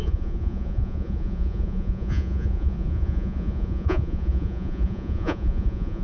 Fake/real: fake